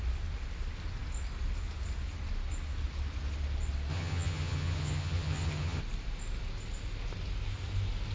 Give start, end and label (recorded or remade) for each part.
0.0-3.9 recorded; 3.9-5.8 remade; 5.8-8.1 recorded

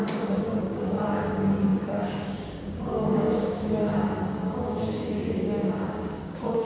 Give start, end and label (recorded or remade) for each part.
0.0-6.6 remade

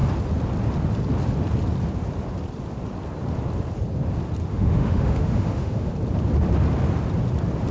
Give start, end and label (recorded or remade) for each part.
0.0-4.5 recorded; 4.5-5.9 remade; 5.9-7.7 recorded

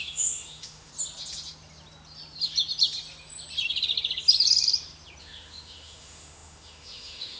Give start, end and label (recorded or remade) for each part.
0.0-0.9 remade; 0.9-5.2 recorded; 5.2-7.4 remade